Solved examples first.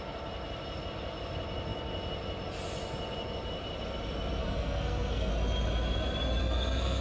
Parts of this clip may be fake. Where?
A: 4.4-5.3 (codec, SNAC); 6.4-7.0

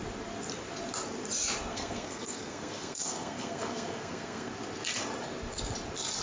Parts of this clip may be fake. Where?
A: 1.7-4.5 (codec, SNAC)

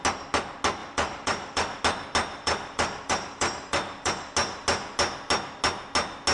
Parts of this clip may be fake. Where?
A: 0.8-1.8 (vocoder, BigVGAN v2); 2.3-4.1

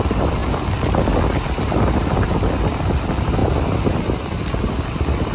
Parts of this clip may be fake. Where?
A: none

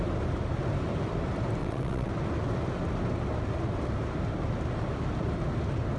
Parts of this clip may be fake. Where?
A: 1.6-2.1 (vocoder, WaveNeXt)